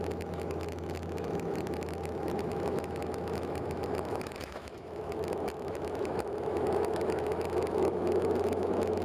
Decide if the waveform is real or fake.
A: fake